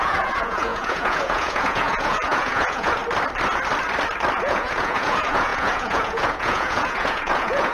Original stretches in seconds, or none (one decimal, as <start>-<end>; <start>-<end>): 3.0-4.4